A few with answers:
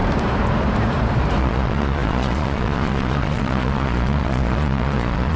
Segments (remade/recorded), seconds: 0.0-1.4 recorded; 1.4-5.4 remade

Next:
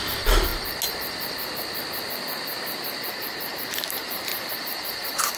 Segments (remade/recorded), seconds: 0.0-0.5 remade; 0.5-3.7 recorded; 3.7-5.4 remade

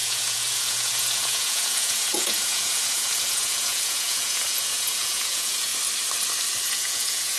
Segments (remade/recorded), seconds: 0.0-5.7 remade; 5.7-6.6 recorded; 6.6-7.4 remade

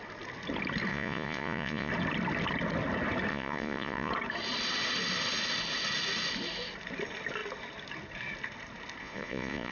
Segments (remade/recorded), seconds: 0.0-0.9 recorded; 0.9-1.9 remade; 1.9-3.3 recorded; 3.3-4.1 remade; 4.1-9.0 recorded; 9.0-9.7 remade

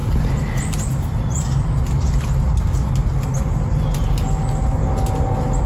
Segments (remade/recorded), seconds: 0.0-5.7 recorded

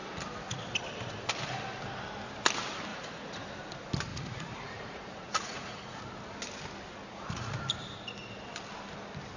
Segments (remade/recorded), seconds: 0.0-2.9 recorded; 2.9-3.4 remade; 3.4-4.1 recorded; 4.1-6.0 remade; 6.0-7.1 recorded; 7.1-7.6 remade; 7.6-9.4 recorded

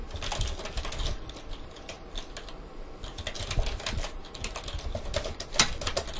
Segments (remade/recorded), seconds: 0.0-6.2 recorded

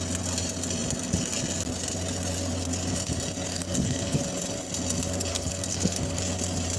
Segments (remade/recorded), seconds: 0.0-3.5 recorded; 3.5-4.2 remade; 4.2-5.3 recorded; 5.3-6.2 remade; 6.2-6.8 recorded